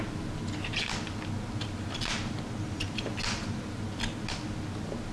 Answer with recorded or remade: recorded